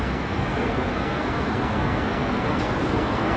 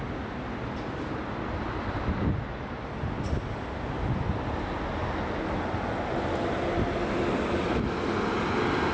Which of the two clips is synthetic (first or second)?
first